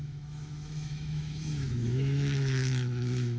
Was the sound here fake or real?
fake